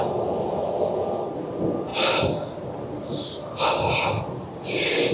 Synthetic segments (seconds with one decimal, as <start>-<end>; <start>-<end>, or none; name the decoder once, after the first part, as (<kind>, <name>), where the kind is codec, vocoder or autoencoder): none